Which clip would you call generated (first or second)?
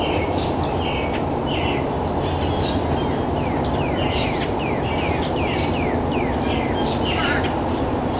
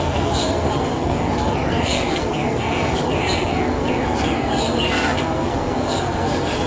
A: second